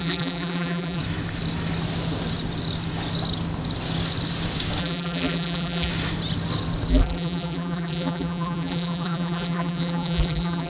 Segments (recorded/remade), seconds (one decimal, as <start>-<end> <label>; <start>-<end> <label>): 0.0-1.0 remade; 1.0-4.8 recorded; 4.8-5.9 remade; 5.9-6.9 recorded; 6.9-10.7 remade